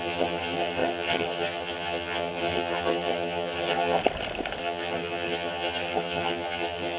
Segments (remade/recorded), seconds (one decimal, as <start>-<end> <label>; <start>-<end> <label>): 0.0-4.0 remade; 4.0-4.6 recorded; 4.6-7.0 remade